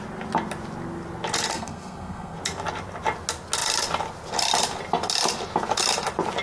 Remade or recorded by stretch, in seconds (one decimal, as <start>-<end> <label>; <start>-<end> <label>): 0.0-1.5 recorded; 1.5-2.4 remade; 2.4-6.4 recorded